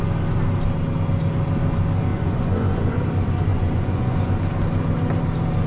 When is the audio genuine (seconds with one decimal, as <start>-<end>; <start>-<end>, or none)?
0.0-2.1; 3.0-3.5; 4.3-5.7